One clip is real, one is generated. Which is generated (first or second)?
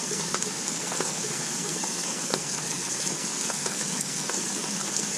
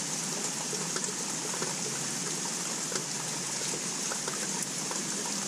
first